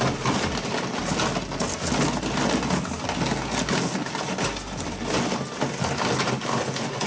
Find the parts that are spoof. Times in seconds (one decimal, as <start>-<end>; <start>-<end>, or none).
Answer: none